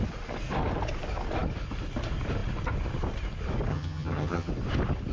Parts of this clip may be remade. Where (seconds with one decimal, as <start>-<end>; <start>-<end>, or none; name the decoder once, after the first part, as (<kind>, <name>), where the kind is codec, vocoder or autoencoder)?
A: 3.7-4.5 (vocoder, HiFi-GAN)